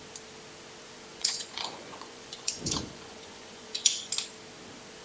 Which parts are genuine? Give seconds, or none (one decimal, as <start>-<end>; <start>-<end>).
0.0-1.1; 4.1-5.0

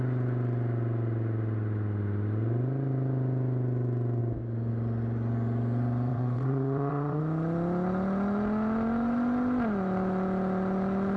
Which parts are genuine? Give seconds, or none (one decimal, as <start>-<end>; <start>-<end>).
0.0-6.1; 7.2-11.2